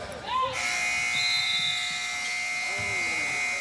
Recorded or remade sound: recorded